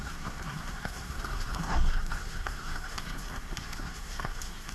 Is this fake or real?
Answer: fake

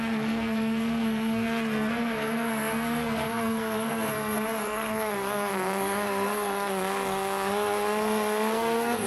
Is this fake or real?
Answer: fake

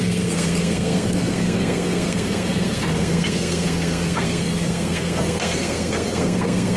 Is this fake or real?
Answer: fake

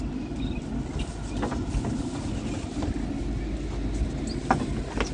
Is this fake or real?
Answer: real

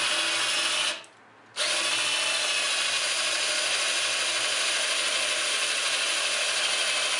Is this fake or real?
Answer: real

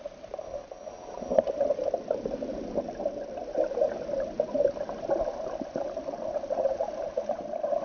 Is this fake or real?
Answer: real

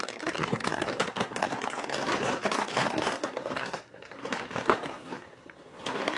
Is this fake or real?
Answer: fake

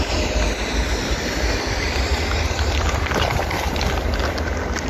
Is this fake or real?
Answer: real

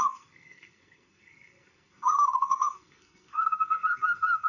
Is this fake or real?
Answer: fake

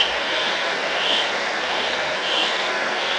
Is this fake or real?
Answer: fake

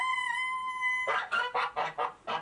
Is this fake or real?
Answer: real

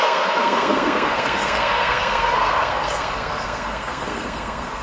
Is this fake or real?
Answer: fake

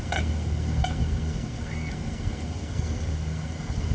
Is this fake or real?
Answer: fake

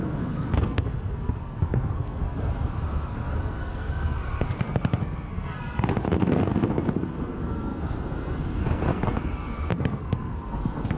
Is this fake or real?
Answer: fake